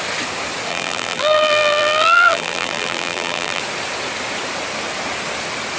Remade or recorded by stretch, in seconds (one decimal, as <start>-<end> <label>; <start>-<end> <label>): 0.0-0.7 recorded; 0.7-3.6 remade; 3.6-5.8 recorded